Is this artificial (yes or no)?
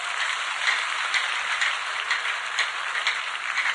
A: no